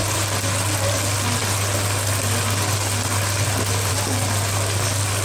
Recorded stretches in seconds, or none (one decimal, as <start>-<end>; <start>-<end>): 0.0-5.2

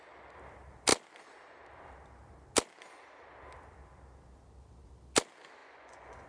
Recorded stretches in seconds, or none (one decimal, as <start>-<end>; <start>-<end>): 0.0-5.6